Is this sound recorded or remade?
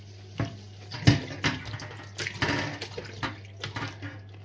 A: recorded